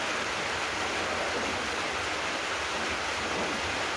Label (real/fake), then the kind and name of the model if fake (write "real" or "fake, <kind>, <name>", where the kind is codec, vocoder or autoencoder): real